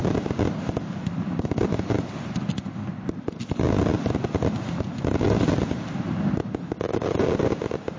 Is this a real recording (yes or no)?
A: yes